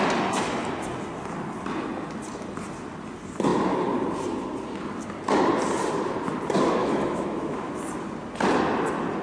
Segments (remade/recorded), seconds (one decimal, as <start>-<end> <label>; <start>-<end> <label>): 0.0-6.8 recorded; 6.8-7.7 remade; 7.7-9.2 recorded